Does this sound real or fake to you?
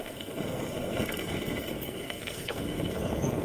fake